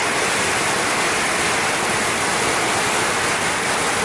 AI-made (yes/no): no